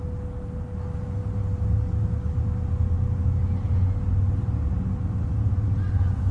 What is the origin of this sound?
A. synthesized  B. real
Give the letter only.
B